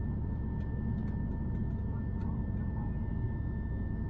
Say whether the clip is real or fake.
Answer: real